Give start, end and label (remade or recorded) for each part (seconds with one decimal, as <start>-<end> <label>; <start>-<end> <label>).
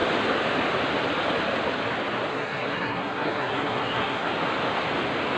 0.0-2.3 recorded; 2.3-4.3 remade; 4.3-5.4 recorded